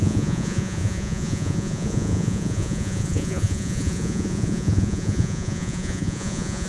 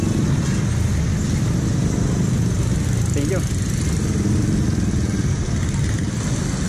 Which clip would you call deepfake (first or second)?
first